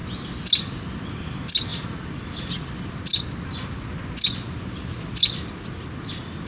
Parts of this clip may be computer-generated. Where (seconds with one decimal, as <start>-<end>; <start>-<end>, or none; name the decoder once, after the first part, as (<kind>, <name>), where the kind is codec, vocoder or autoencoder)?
none